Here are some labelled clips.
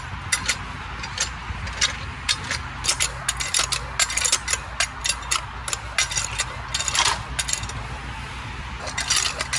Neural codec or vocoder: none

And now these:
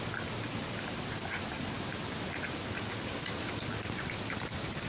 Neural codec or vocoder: none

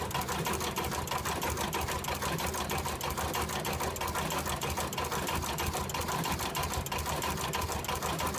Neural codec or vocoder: none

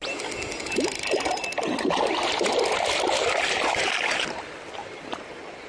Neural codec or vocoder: none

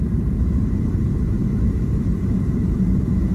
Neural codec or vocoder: vocoder, BigVGAN v2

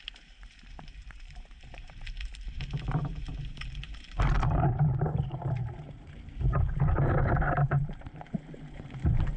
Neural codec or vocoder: vocoder, BigVGAN v2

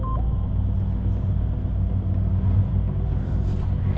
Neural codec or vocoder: none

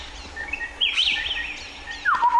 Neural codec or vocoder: none